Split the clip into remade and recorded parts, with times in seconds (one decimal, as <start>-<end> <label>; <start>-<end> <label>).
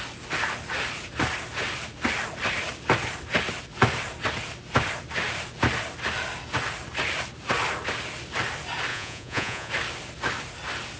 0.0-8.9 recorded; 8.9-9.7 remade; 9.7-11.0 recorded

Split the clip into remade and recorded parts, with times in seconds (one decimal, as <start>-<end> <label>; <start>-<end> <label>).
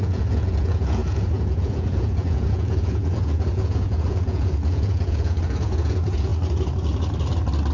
0.0-6.3 remade; 6.3-7.7 recorded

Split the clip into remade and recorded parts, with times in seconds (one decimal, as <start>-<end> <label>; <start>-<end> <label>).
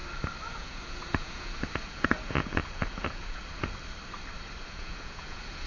0.0-0.5 recorded; 0.5-3.4 remade; 3.4-4.6 recorded; 4.6-5.7 remade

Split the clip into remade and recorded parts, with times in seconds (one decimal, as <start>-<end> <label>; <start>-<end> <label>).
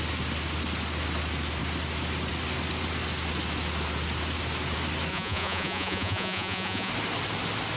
0.0-5.1 recorded; 5.1-6.9 remade; 6.9-7.8 recorded